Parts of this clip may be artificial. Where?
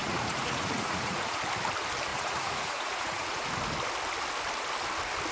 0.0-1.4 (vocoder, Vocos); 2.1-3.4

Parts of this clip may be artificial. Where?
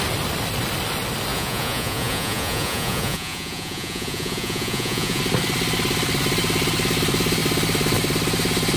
1.3-5.2 (vocoder, Vocos)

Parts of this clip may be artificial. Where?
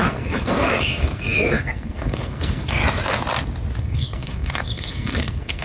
0.0-2.8 (codec, SNAC); 3.8-5.6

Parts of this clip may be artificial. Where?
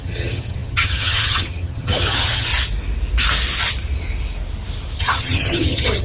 0.0-2.5 (vocoder, HiFi-GAN); 5.0-6.0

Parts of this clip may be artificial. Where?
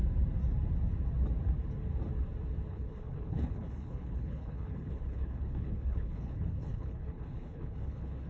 2.7-8.3 (codec, HILCodec)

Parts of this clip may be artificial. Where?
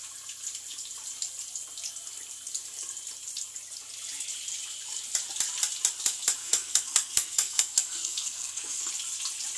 6.4-8.9 (codec, SNAC)